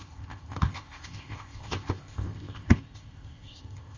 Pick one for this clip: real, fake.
fake